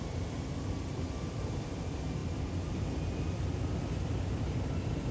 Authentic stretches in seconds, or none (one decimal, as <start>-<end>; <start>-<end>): 0.0-5.1